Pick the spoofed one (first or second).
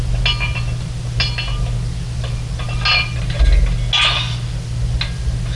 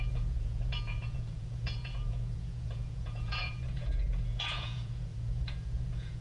second